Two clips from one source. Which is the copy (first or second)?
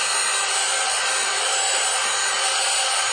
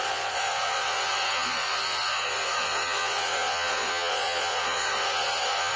second